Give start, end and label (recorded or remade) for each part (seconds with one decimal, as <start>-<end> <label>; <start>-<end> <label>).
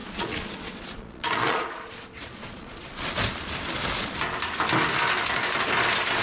0.0-2.9 remade; 2.9-6.2 recorded